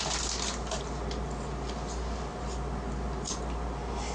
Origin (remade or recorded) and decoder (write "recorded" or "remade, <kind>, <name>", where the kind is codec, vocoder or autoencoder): recorded